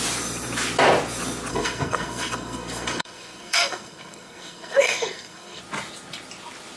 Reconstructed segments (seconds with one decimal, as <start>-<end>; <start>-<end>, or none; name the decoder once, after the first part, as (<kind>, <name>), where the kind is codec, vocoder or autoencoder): 1.5-5.6 (codec, SNAC)